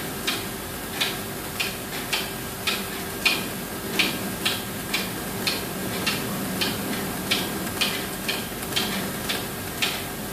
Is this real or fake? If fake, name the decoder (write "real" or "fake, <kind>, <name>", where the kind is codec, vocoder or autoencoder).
real